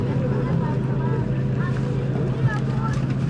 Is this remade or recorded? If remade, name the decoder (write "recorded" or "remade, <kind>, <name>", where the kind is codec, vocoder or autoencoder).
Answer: recorded